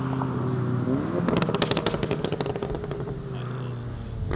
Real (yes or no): yes